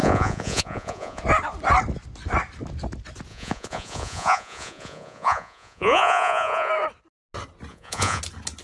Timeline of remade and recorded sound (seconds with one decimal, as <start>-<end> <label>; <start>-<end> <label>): 0.0-1.2 remade; 1.2-3.3 recorded; 3.3-6.7 remade; 6.7-7.7 recorded; 7.7-8.2 remade; 8.2-8.6 recorded

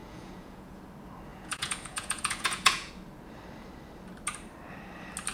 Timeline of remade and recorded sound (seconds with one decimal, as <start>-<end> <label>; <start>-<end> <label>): 0.0-0.8 remade; 0.8-1.3 recorded; 1.3-2.9 remade; 2.9-5.3 recorded

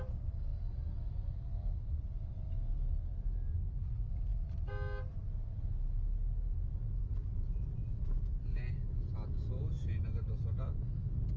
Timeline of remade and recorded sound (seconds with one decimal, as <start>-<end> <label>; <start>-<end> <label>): 0.0-11.4 recorded

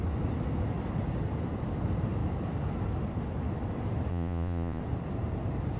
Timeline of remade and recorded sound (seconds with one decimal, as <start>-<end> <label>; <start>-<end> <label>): 0.0-4.1 recorded; 4.1-4.8 remade; 4.8-5.8 recorded

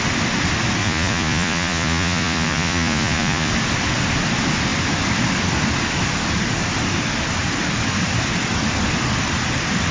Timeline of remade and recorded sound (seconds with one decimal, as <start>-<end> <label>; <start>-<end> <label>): 0.0-0.8 recorded; 0.8-3.5 remade; 3.5-9.9 recorded

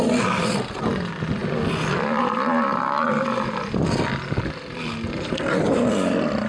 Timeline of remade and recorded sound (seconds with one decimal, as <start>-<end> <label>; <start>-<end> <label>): 0.0-6.5 recorded

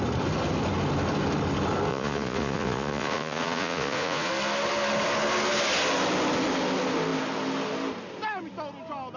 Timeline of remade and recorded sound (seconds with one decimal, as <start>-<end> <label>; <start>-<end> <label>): 0.0-1.9 recorded; 1.9-4.3 remade; 4.3-9.2 recorded